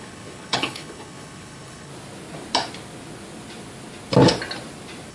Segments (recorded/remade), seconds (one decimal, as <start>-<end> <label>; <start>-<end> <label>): 0.0-1.9 remade; 1.9-5.1 recorded